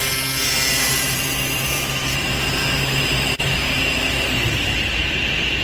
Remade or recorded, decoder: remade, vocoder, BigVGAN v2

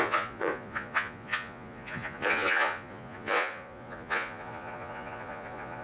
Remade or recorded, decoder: remade, vocoder, Vocos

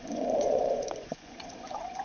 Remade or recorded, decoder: remade, vocoder, Vocos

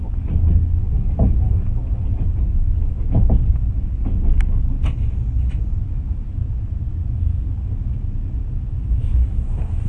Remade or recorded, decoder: recorded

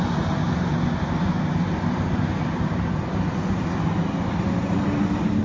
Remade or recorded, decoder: recorded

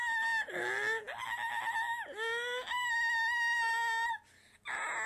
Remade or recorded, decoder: recorded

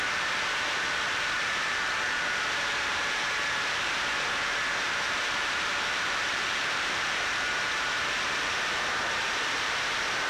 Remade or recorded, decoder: remade, vocoder, BigVGAN v2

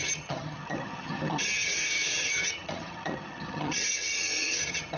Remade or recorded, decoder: remade, vocoder, HiFi-GAN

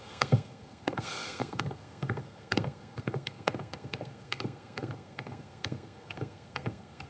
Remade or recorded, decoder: remade, codec, SNAC